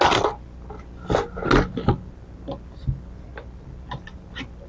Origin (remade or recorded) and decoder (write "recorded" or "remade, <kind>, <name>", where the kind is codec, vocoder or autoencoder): recorded